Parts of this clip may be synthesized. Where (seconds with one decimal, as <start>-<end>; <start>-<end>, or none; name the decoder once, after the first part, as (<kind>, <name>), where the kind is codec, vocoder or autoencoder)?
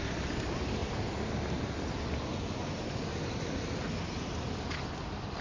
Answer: none